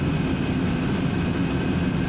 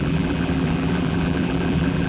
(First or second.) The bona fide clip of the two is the first